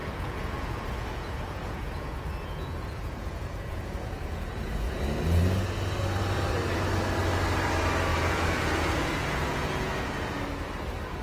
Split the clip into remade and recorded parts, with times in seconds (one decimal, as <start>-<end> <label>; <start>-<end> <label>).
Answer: 0.0-5.0 remade; 5.0-8.1 recorded; 8.1-10.4 remade; 10.4-11.2 recorded